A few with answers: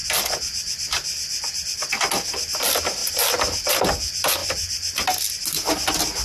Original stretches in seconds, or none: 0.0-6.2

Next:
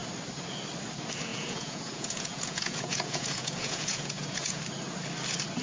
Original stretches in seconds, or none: 0.0-1.3; 4.6-5.6

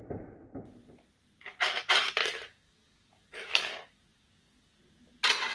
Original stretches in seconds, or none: 0.0-2.2; 4.8-5.5

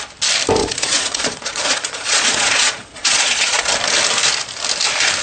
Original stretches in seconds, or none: 0.0-0.6; 3.7-5.2

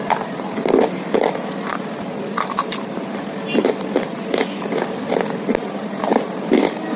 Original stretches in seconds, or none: 0.0-7.0

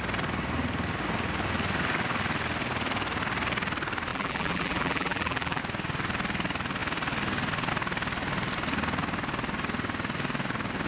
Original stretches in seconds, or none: 0.0-4.1; 5.6-10.9